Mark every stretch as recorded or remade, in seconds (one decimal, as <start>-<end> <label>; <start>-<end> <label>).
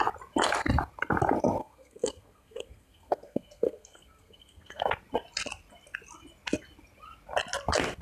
0.0-1.6 recorded; 1.6-4.8 remade; 4.8-8.0 recorded